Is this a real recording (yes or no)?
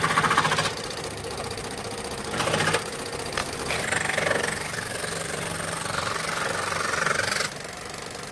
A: yes